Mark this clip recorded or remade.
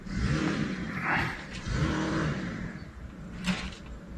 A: remade